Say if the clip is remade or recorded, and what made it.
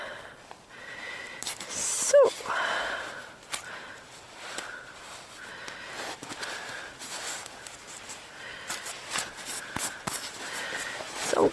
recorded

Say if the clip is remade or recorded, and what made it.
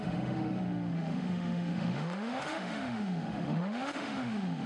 remade, autoencoder, DAC-VAE